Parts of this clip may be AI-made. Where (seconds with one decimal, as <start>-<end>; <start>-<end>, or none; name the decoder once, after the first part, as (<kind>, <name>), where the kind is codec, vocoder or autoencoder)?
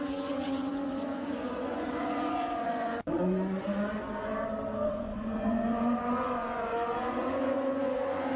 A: 0.0-4.3 (vocoder, Vocos); 4.9-8.4